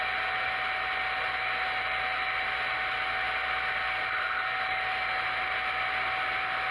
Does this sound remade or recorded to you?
recorded